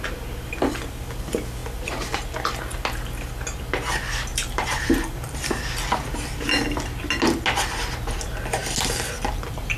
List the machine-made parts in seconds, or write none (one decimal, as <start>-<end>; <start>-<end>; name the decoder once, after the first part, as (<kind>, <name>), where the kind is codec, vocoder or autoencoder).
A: 4.3-5.6 (vocoder, BigVGAN v2)